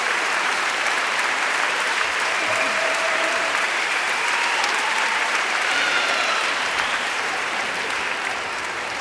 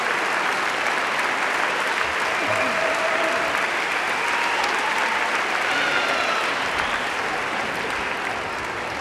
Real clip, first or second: second